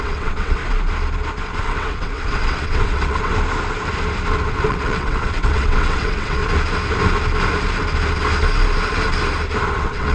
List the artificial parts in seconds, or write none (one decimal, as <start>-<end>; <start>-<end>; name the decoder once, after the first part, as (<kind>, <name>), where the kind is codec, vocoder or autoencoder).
0.0-0.6 (vocoder, WaveNeXt); 1.6-3.3; 4.5-6.4; 9.7-10.1